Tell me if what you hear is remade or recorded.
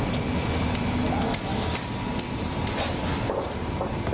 recorded